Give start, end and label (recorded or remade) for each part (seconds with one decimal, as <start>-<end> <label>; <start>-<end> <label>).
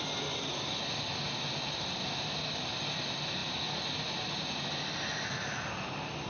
0.0-6.3 recorded